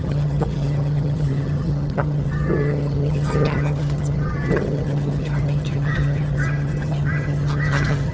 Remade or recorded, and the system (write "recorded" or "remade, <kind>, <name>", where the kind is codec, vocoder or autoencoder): remade, vocoder, HiFi-GAN